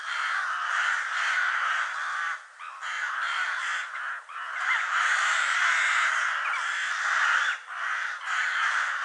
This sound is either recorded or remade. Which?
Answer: recorded